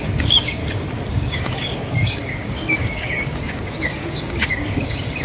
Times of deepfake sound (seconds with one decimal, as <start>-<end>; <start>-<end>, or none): 0.0-0.6; 1.1-5.2